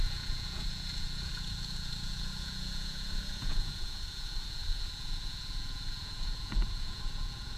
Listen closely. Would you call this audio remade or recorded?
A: remade